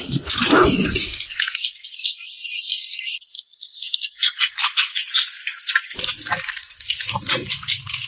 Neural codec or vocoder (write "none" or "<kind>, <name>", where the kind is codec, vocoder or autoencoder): none